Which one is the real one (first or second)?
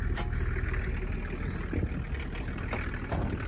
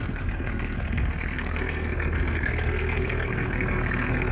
first